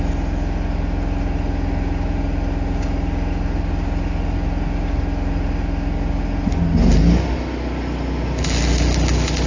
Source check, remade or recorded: recorded